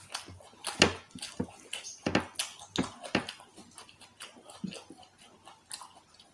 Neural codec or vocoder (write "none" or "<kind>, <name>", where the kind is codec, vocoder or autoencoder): none